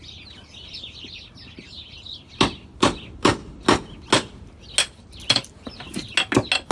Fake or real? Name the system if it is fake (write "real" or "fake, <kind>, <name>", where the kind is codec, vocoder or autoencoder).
real